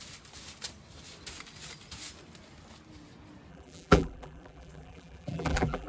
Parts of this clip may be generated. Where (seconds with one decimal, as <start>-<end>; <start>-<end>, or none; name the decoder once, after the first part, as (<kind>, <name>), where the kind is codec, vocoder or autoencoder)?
3.5-5.9 (vocoder, BigVGAN v2)